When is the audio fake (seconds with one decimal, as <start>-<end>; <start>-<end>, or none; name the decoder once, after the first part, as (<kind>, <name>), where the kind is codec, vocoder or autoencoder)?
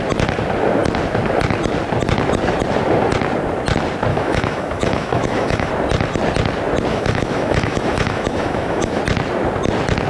4.1-5.7 (autoencoder, DAC-VAE); 6.9-9.0